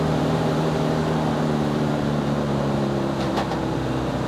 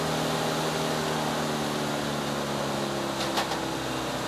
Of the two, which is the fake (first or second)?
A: first